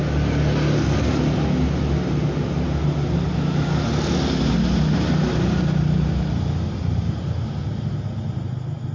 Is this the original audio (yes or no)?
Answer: yes